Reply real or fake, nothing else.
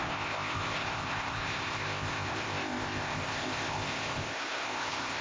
fake